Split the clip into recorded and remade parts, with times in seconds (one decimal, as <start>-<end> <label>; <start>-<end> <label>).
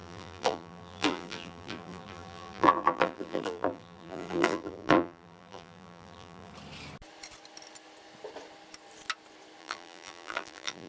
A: 0.0-6.5 remade; 6.5-9.6 recorded; 9.6-10.9 remade